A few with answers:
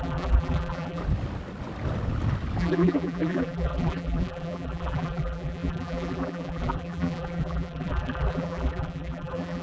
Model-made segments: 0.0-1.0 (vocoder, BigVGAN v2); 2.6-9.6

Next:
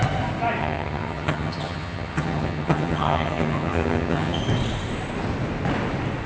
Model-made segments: 0.6-4.4 (vocoder, HiFi-GAN)

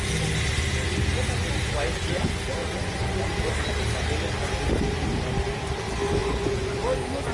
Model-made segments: 2.6-3.2 (vocoder, Vocos); 6.2-6.8

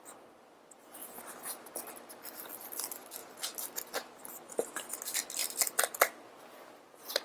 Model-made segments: none

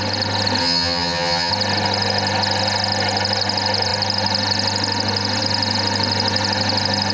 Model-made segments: 0.6-1.5 (vocoder, HiFi-GAN)

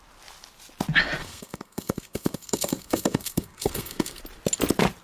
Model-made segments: 1.2-4.2 (codec, SNAC)

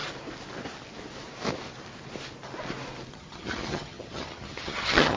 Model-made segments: 3.1-5.2 (vocoder, HiFi-GAN)

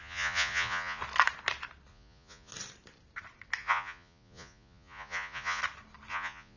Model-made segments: 0.0-1.0 (vocoder, Vocos); 1.9-2.5; 3.6-5.6; 6.1-6.6